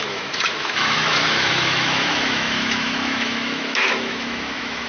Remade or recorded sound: remade